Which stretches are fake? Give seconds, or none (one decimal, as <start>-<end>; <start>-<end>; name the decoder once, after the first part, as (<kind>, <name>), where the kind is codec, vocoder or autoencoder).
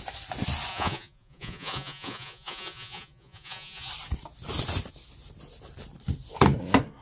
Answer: 0.7-3.9 (vocoder, Vocos)